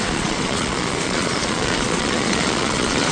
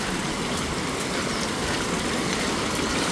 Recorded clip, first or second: second